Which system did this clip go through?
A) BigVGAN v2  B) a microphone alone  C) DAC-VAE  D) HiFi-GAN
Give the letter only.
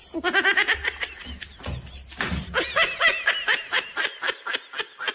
B